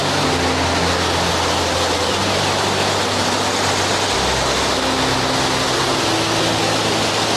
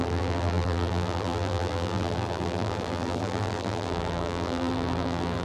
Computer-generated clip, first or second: second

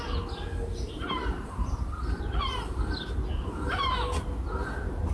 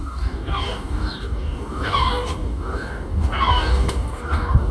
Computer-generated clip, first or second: second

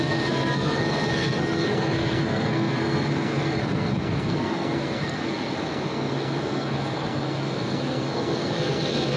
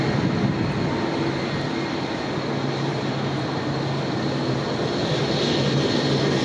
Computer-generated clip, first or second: first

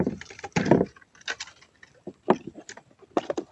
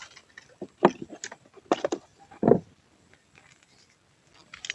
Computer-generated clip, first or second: first